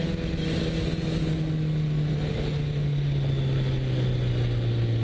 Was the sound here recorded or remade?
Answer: recorded